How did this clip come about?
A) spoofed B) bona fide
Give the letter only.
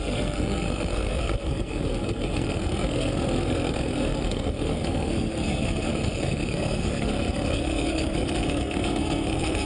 A